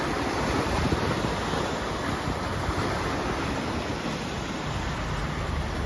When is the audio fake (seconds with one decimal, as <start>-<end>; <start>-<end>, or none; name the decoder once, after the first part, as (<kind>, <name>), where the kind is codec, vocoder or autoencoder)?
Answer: none